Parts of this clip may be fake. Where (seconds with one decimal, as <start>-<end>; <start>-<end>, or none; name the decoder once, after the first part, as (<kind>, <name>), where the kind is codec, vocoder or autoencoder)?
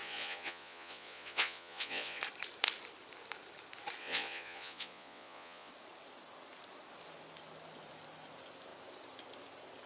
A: 0.0-2.2 (vocoder, Vocos); 4.0-5.7